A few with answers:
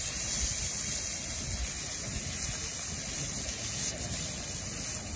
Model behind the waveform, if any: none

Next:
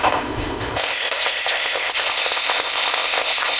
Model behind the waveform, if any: codec, ZipCodec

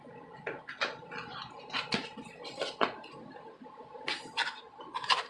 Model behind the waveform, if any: none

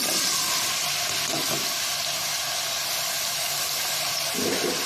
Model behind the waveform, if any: none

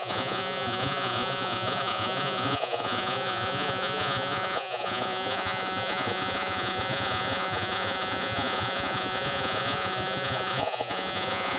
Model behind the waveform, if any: vocoder, Vocos